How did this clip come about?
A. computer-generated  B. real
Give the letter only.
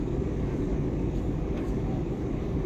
A